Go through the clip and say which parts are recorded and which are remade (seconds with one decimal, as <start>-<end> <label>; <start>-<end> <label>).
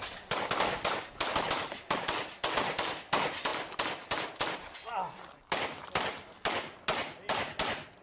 0.0-8.0 recorded